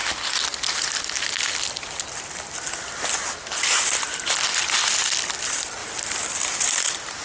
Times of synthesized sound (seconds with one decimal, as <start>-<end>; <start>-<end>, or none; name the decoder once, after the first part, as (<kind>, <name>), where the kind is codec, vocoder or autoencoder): none